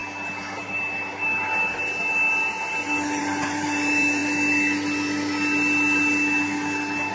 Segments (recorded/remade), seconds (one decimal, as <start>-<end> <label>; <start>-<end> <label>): 0.0-0.6 recorded; 0.6-1.8 remade; 1.8-3.2 recorded; 3.2-4.2 remade; 4.2-7.1 recorded